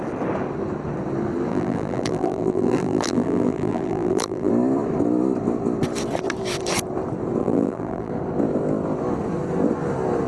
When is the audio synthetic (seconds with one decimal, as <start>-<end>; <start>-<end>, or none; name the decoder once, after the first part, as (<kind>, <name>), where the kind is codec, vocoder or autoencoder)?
1.5-4.5 (vocoder, BigVGAN v2); 7.4-8.1